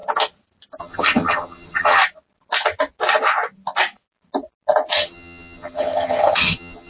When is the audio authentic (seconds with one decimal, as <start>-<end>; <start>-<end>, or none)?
0.0-0.8; 2.0-4.9